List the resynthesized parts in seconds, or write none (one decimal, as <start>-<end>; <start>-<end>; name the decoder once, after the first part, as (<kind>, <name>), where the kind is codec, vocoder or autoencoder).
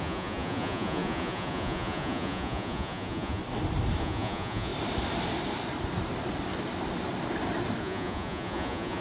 0.0-3.4 (vocoder, Vocos); 4.0-4.7; 7.8-9.0